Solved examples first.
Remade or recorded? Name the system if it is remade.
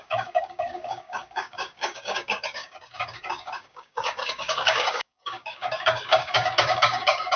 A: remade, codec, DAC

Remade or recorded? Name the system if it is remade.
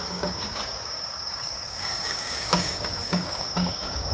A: remade, codec, DAC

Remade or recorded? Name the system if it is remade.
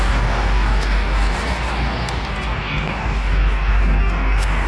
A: remade, codec, DAC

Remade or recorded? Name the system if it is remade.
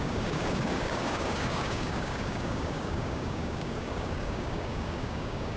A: remade, codec, DAC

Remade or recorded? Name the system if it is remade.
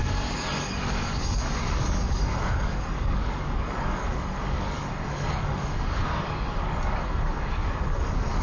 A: remade, codec, DAC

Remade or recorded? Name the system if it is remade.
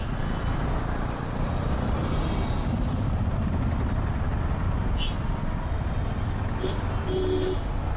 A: recorded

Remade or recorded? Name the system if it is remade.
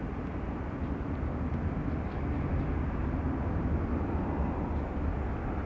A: recorded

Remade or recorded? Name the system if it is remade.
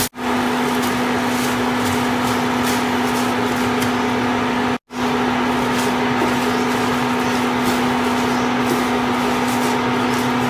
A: recorded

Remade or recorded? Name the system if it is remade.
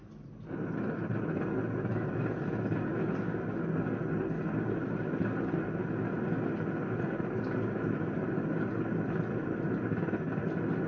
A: recorded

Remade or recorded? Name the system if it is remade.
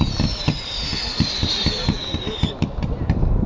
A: recorded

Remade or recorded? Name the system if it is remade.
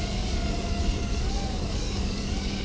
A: remade, codec, DAC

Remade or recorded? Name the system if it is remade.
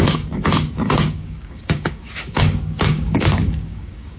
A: remade, codec, DAC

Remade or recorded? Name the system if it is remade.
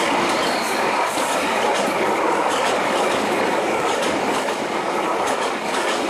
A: remade, codec, DAC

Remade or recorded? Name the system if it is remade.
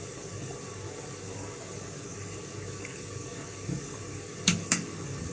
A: remade, codec, DAC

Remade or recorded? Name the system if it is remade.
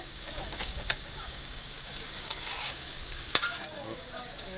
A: remade, codec, DAC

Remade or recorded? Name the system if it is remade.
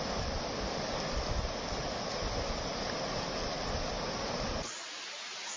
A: recorded